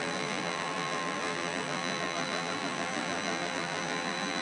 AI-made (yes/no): yes